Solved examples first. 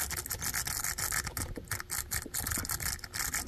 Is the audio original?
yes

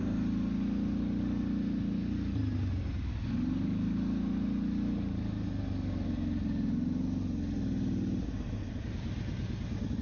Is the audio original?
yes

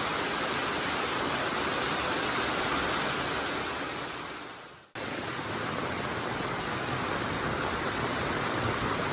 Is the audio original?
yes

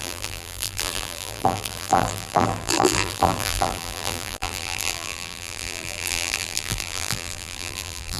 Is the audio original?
no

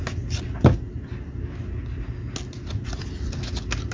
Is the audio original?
yes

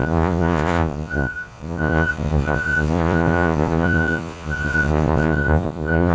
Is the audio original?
no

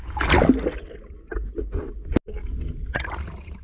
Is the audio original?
yes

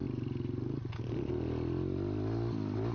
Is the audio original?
yes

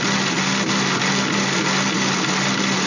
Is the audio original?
yes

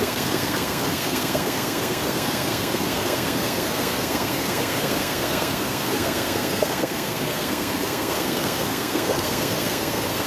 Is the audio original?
no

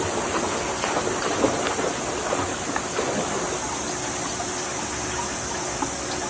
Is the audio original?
yes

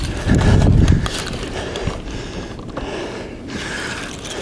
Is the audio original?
yes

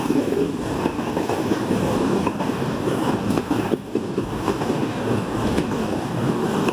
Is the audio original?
no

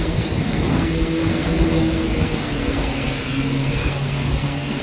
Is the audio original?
no